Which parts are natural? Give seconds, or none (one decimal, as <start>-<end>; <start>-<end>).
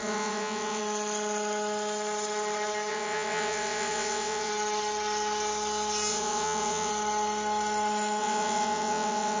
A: 0.8-2.9; 4.5-6.1; 6.9-8.2